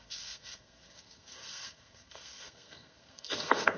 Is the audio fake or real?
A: fake